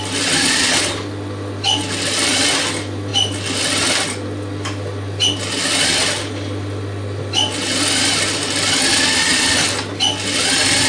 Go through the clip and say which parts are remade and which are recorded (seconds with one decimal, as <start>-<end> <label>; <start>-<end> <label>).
0.0-10.9 recorded